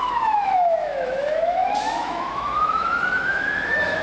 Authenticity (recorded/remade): remade